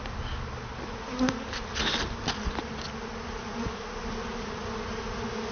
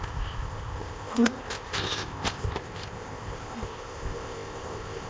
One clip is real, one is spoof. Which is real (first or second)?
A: first